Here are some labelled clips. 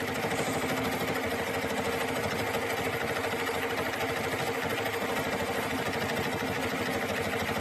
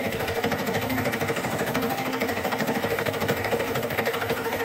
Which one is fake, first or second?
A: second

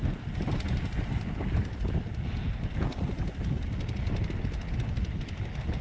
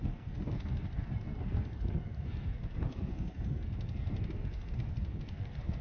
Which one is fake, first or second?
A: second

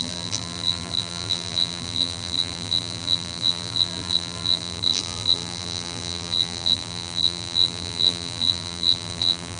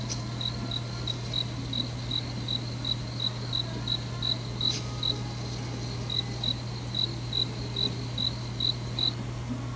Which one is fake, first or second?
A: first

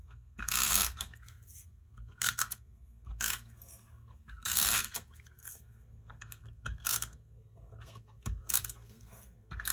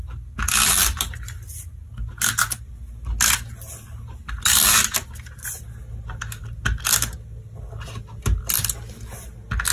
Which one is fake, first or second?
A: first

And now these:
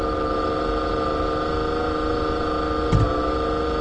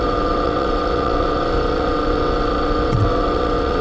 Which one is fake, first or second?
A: second